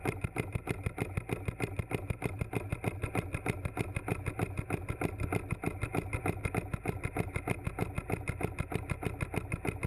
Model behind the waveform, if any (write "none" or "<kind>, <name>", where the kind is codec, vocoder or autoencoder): none